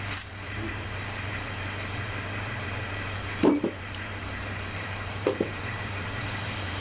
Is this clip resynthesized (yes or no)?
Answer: yes